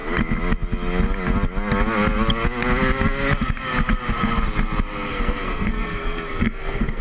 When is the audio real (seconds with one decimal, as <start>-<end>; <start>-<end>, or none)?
0.0-5.1